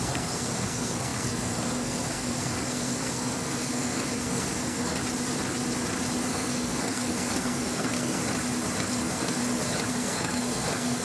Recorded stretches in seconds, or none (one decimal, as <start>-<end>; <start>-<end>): 5.0-6.3; 8.2-8.8; 9.4-9.9